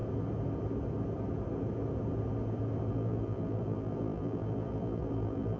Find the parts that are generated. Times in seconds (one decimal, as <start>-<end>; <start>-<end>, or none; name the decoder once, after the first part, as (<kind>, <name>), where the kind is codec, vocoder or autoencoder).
2.9-5.6 (vocoder, BigVGAN v2)